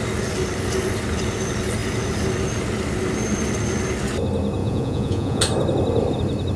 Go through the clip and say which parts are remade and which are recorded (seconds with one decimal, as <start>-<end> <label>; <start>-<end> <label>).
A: 0.0-4.6 recorded; 4.6-5.4 remade; 5.4-6.6 recorded